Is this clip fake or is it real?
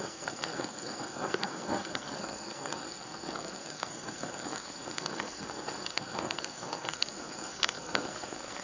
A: fake